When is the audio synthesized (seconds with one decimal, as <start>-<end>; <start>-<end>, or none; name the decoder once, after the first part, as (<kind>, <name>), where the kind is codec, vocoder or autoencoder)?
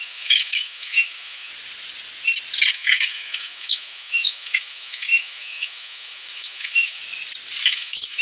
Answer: 0.0-1.5 (autoencoder, DAC-VAE); 2.7-7.0; 7.6-8.2